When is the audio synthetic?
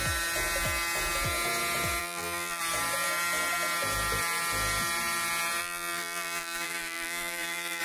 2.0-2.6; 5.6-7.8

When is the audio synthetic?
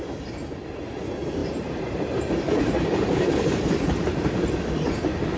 1.4-4.6